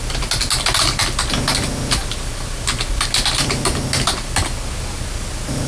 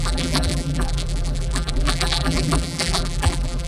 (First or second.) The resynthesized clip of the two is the second